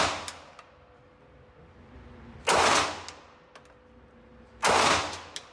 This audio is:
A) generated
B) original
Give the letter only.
B